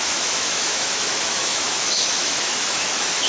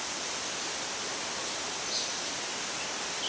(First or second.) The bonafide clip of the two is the second